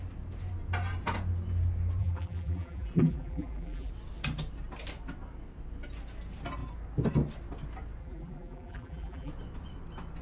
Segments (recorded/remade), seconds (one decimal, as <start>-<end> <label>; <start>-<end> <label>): 0.0-2.0 recorded; 2.0-3.9 remade; 3.9-8.0 recorded; 8.0-9.3 remade; 9.3-10.2 recorded